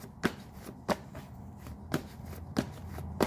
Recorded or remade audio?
recorded